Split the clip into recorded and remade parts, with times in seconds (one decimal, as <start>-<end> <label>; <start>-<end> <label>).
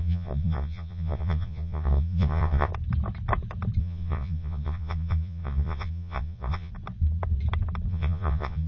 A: 0.0-2.7 remade; 2.7-3.8 recorded; 3.8-6.7 remade; 6.7-7.9 recorded; 7.9-8.7 remade